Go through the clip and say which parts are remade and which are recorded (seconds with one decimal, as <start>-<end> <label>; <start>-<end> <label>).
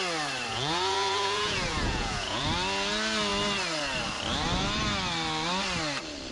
0.0-0.5 recorded; 0.5-2.4 remade; 2.4-6.3 recorded